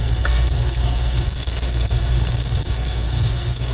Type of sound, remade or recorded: remade